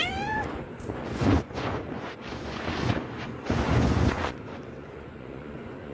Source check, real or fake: fake